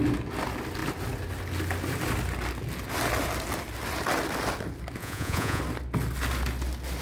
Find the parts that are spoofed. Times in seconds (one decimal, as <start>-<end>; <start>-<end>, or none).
5.0-5.6